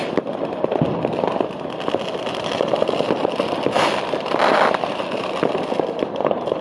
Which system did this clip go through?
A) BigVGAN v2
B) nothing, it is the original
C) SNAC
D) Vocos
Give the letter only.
B